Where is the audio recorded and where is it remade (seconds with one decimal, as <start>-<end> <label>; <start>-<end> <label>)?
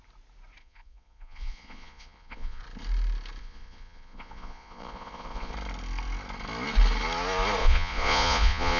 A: 0.0-0.6 recorded; 0.6-2.6 remade; 2.6-3.4 recorded; 3.4-5.5 remade; 5.5-7.6 recorded; 7.6-8.8 remade